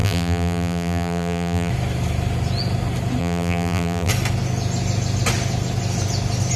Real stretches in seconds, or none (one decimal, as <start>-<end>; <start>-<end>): 1.7-3.2; 4.1-6.6